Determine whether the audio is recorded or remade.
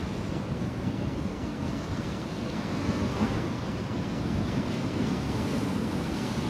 remade